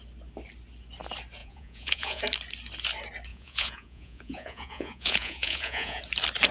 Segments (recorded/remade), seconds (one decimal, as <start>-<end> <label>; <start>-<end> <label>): 0.0-1.4 recorded; 1.4-2.2 remade; 2.2-3.3 recorded; 3.3-6.0 remade; 6.0-6.5 recorded

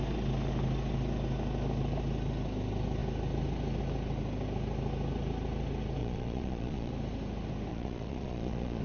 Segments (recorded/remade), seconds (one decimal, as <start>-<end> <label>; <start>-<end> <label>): 0.0-6.0 recorded; 6.0-6.9 remade; 6.9-7.7 recorded; 7.7-8.8 remade

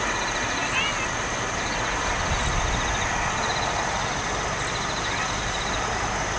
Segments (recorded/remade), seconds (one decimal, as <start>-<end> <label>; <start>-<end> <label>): 0.0-6.4 recorded

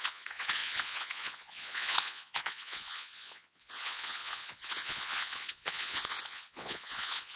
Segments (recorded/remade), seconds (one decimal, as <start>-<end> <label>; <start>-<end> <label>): 0.0-7.4 remade

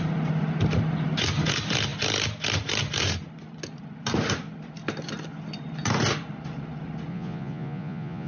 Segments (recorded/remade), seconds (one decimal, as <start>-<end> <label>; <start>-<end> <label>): 0.0-7.1 recorded; 7.1-8.3 remade

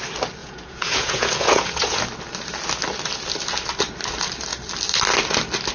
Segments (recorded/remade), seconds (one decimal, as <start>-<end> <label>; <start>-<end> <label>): 0.0-0.4 recorded; 0.4-2.0 remade; 2.0-5.7 recorded